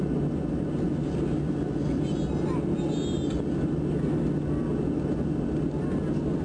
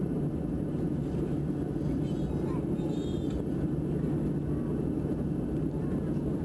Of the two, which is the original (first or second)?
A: first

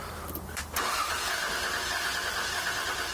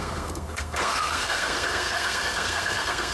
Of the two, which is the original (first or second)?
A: first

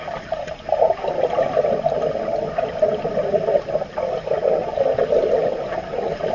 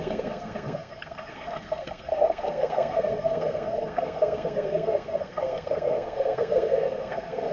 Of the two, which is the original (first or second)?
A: first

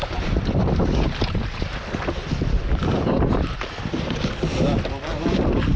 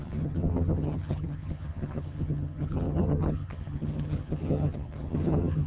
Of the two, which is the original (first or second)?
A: first